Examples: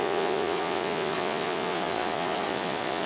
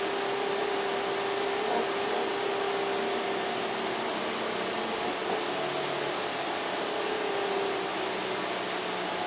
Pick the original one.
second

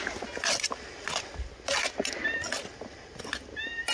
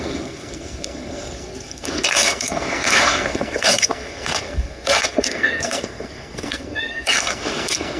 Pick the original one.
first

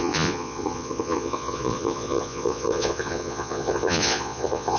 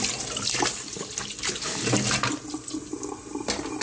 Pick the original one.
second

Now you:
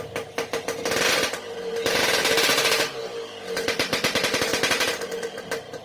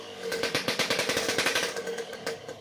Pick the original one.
first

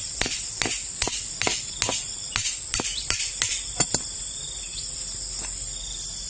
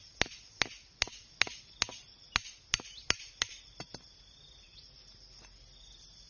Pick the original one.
second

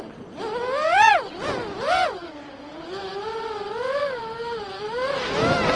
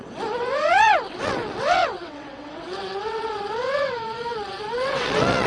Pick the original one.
first